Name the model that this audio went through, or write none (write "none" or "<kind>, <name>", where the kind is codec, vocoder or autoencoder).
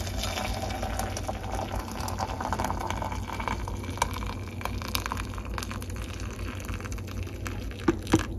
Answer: none